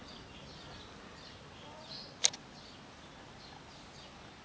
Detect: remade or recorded recorded